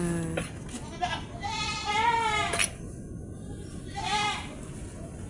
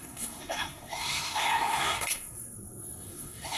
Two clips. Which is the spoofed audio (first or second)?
second